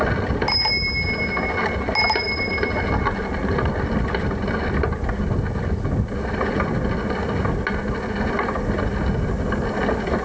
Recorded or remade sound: recorded